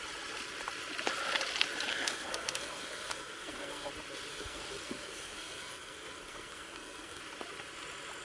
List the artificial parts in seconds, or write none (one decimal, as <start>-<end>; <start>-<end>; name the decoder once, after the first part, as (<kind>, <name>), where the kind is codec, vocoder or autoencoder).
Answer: 1.9-3.9 (codec, SNAC); 4.3-7.2